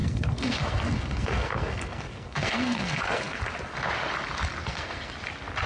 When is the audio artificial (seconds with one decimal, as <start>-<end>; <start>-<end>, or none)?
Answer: 0.0-3.4; 4.6-5.1